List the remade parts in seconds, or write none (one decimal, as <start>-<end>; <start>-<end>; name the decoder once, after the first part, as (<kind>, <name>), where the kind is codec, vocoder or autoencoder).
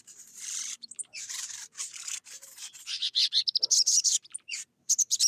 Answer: 0.0-3.2 (vocoder, BigVGAN v2); 3.8-5.3